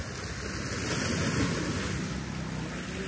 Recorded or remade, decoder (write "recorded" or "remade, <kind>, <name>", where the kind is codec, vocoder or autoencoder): recorded